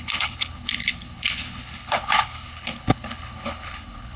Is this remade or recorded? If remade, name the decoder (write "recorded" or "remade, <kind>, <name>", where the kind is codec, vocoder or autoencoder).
remade, codec, HILCodec